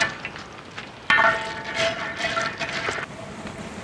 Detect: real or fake real